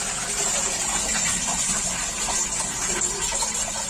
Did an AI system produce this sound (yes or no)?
no